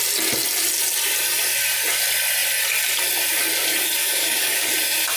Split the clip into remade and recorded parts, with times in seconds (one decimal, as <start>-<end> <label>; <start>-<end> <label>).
0.0-4.0 recorded; 4.0-4.7 remade; 4.7-5.2 recorded